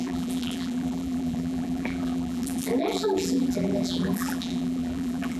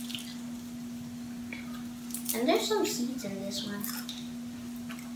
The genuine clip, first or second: second